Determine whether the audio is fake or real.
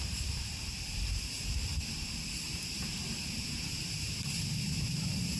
fake